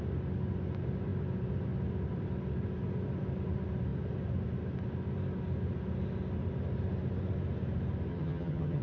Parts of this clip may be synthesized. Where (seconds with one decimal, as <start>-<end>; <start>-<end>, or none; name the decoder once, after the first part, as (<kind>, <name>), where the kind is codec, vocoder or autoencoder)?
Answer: 8.1-8.8 (vocoder, HiFi-GAN)